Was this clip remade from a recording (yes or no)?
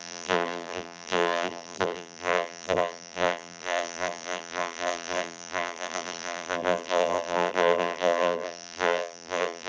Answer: yes